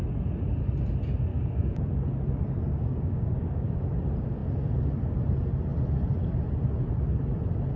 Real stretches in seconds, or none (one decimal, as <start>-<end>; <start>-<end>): 0.0-1.3; 1.8-2.7; 3.8-7.8